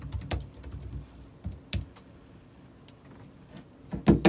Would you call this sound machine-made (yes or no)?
no